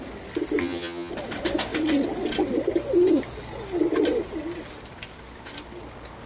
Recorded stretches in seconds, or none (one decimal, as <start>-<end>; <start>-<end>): 0.0-0.6; 1.1-6.3